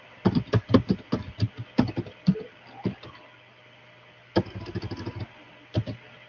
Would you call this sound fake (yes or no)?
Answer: no